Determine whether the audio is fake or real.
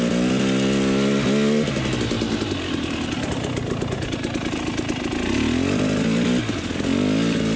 real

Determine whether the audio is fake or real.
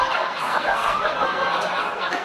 fake